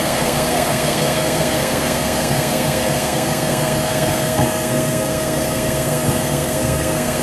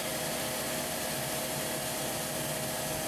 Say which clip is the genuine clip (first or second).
second